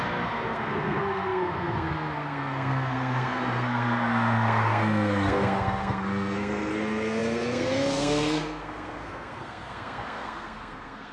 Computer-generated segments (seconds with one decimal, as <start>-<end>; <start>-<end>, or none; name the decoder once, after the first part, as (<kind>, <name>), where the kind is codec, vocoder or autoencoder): 0.0-11.1 (codec, SNAC)